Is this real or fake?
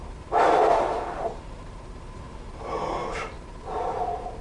fake